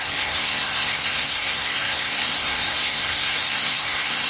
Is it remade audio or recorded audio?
remade